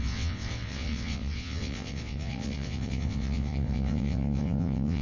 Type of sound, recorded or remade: remade